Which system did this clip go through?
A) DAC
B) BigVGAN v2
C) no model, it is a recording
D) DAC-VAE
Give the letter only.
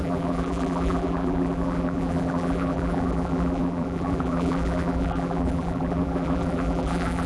B